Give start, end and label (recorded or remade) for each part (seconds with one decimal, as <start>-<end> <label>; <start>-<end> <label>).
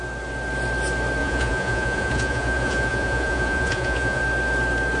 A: 0.0-1.2 recorded; 1.2-4.2 remade; 4.2-5.0 recorded